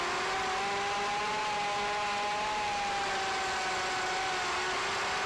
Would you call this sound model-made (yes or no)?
no